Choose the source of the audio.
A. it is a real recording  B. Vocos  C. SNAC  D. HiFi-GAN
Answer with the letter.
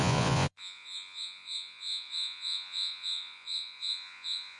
B